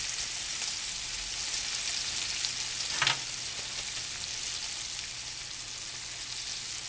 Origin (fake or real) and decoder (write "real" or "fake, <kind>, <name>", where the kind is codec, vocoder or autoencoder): real